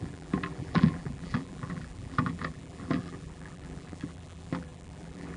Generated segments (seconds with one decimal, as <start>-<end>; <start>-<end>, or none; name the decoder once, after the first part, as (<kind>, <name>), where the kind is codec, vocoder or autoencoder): 0.0-5.4 (vocoder, BigVGAN v2)